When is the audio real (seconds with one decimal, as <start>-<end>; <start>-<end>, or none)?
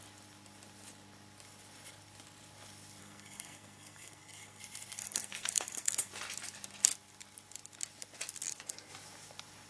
0.0-3.0; 4.6-5.0; 6.1-9.7